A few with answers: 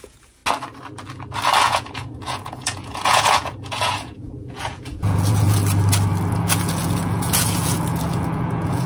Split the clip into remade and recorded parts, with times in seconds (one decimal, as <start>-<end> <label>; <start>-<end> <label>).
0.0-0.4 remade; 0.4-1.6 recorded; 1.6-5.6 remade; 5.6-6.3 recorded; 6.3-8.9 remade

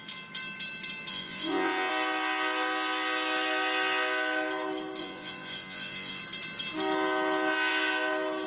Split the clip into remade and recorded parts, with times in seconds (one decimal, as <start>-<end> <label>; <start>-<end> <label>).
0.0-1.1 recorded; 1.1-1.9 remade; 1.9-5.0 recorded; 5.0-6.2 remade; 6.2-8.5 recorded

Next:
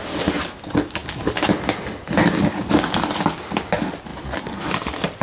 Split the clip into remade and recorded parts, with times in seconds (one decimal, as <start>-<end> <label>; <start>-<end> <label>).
0.0-5.2 recorded

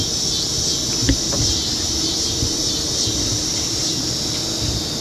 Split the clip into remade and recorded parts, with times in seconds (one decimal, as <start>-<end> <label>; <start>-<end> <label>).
0.0-1.0 recorded; 1.0-4.0 remade; 4.0-5.0 recorded

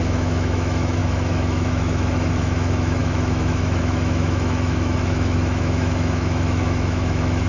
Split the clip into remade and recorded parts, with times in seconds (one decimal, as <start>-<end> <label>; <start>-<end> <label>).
0.0-7.5 remade